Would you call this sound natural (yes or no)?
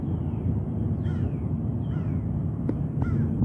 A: yes